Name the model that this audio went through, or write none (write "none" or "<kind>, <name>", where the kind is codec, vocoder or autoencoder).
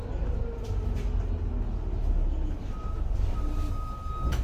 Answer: none